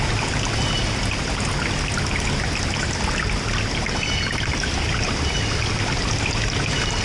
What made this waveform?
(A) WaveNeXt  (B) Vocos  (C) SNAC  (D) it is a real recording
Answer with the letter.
D